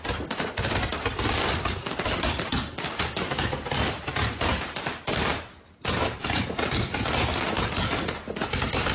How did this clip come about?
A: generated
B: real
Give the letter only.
B